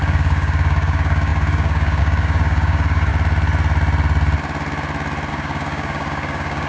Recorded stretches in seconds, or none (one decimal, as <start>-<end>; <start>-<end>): 3.1-5.3